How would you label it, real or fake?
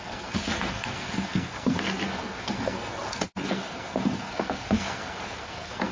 fake